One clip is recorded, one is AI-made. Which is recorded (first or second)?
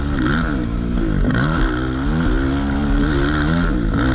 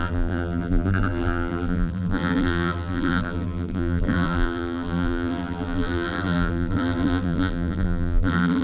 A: first